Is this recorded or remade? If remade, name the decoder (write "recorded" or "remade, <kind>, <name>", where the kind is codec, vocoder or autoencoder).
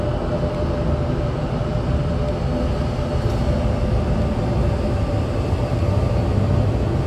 recorded